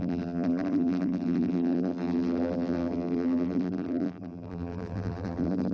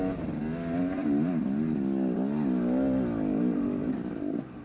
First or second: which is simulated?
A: first